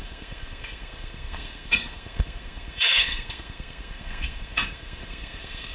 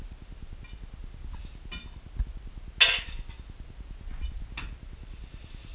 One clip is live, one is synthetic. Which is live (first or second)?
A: second